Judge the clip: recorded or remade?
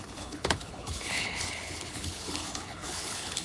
remade